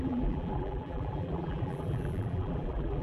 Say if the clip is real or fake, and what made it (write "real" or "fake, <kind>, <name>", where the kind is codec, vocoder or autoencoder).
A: fake, vocoder, BigVGAN v2